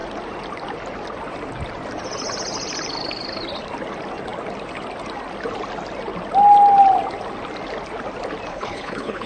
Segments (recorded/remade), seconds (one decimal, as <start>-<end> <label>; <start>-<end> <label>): 0.0-8.5 recorded; 8.5-9.3 remade